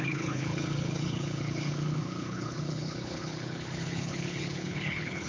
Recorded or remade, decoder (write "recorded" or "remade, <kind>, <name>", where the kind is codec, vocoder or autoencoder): remade, codec, HILCodec